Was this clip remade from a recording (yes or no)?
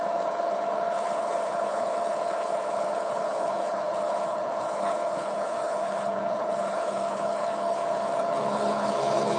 yes